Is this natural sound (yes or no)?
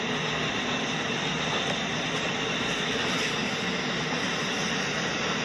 yes